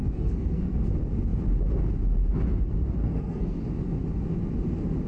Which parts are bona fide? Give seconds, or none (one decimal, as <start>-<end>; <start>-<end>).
0.9-3.0; 3.6-5.1